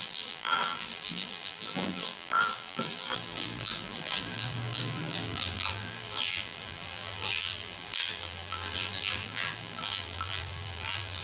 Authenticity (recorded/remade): remade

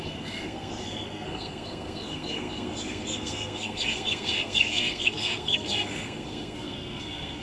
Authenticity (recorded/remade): remade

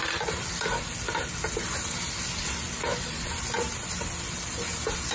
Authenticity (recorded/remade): recorded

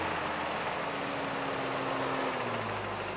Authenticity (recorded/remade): recorded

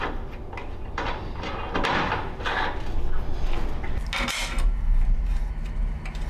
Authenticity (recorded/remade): recorded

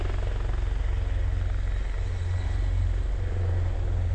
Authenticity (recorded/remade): recorded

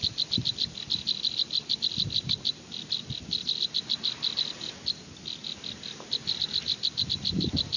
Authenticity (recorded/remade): recorded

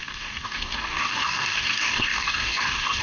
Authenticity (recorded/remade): remade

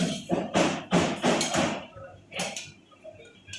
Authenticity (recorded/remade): recorded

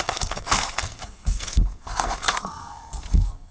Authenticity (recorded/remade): remade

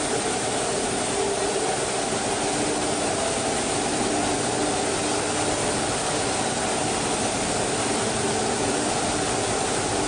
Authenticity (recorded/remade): recorded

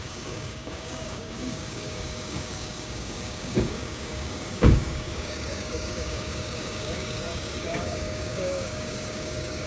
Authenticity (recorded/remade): remade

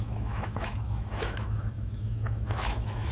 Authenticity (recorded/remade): remade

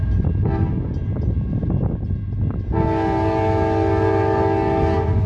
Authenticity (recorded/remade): recorded